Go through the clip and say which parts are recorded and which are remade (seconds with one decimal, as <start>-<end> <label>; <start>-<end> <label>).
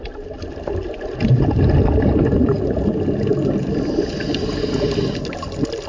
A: 0.0-5.9 recorded